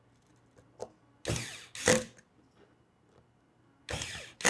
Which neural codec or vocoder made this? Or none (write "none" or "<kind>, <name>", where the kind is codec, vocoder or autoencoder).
none